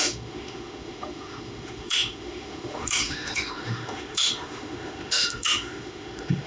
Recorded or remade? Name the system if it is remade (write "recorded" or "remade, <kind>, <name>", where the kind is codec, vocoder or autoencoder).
remade, autoencoder, DAC-VAE